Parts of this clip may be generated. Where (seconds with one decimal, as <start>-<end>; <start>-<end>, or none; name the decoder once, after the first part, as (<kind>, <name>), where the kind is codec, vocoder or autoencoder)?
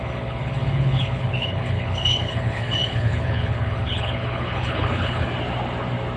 0.0-5.3 (codec, HILCodec)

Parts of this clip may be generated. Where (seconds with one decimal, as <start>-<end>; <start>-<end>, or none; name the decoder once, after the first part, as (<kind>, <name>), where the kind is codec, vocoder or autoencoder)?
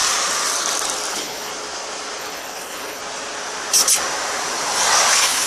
1.1-1.5 (codec, HILCodec); 2.2-3.0; 5.1-5.5